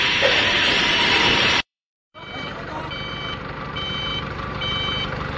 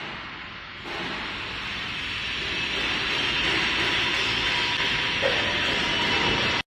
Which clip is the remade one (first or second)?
first